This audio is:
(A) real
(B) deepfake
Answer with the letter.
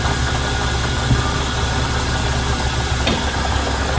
A